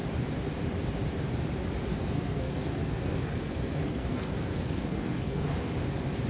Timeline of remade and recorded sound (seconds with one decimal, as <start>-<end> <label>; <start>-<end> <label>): 0.0-1.9 recorded; 1.9-5.5 remade; 5.5-6.3 recorded